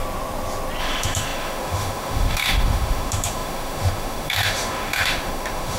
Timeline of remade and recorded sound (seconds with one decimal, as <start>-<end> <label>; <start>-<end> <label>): 0.0-0.8 recorded; 0.8-5.8 remade